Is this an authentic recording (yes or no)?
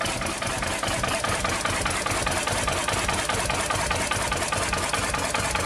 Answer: yes